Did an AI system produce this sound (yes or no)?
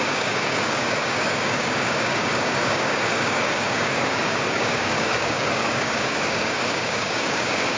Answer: yes